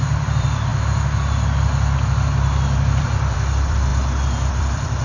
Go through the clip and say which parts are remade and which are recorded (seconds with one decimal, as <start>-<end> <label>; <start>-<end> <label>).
0.0-0.7 remade; 0.7-3.0 recorded; 3.0-3.9 remade; 3.9-4.5 recorded; 4.5-5.0 remade